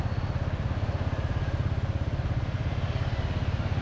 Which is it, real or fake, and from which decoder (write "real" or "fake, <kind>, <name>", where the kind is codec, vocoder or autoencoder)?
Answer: real